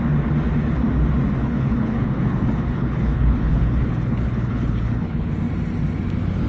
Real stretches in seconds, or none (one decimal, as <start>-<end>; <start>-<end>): 0.0-1.4; 5.3-6.5